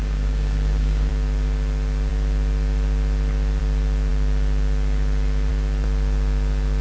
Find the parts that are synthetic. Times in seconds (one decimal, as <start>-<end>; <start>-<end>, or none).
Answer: 0.0-1.1